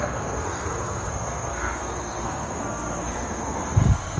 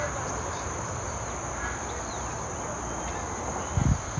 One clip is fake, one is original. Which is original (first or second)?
second